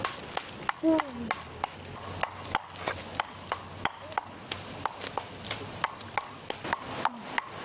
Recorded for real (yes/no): yes